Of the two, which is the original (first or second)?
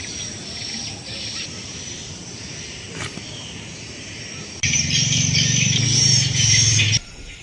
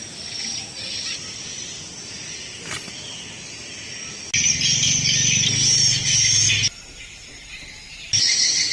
second